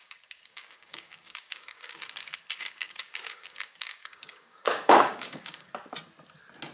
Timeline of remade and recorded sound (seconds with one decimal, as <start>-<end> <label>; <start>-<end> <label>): 0.0-2.0 remade; 2.0-2.6 recorded; 2.6-5.7 remade; 5.7-6.7 recorded